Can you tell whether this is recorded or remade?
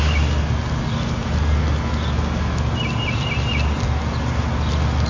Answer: recorded